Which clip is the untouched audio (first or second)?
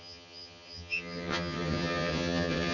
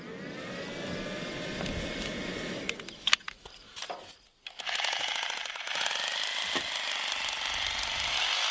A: second